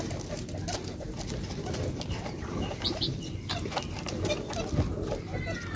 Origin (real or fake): real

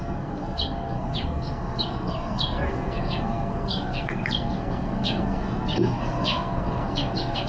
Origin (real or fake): fake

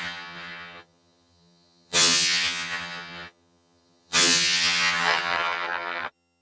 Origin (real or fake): fake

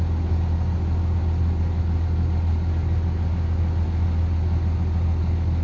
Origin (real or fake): real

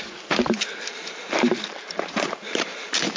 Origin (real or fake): fake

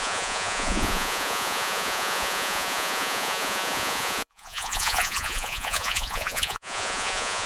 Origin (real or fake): fake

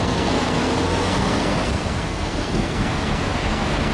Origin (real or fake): fake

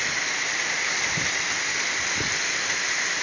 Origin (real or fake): real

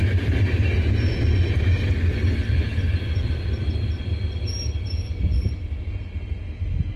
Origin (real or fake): real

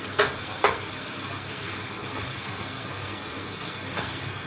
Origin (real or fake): fake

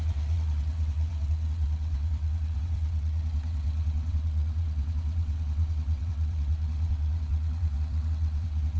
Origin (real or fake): fake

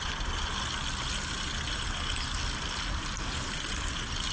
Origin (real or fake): real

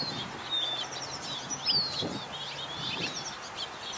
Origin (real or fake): real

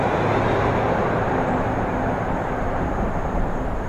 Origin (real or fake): fake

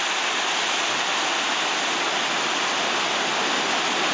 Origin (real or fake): real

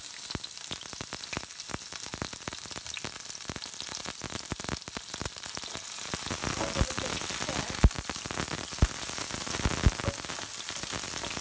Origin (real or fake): real